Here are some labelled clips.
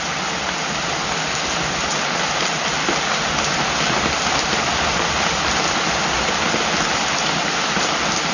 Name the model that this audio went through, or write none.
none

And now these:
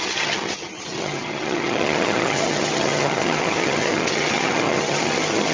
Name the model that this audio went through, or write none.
vocoder, HiFi-GAN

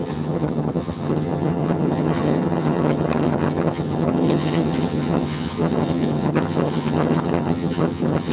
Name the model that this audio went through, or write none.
vocoder, HiFi-GAN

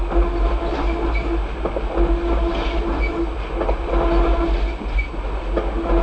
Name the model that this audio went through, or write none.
none